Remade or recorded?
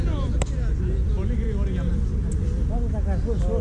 recorded